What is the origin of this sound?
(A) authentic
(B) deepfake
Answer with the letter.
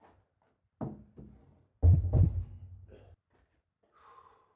A